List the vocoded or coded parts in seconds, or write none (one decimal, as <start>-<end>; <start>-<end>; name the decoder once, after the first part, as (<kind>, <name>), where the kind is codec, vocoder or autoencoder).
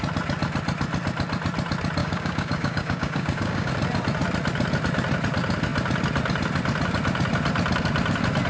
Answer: 2.0-3.7 (codec, DAC)